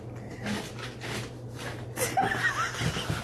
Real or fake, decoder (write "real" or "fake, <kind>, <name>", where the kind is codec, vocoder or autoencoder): real